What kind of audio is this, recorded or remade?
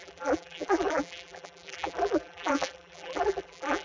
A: remade